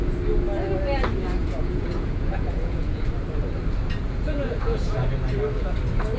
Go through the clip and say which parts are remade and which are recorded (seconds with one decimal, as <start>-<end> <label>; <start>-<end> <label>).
0.0-1.4 recorded; 1.4-3.0 remade; 3.0-4.0 recorded; 4.0-5.0 remade; 5.0-6.2 recorded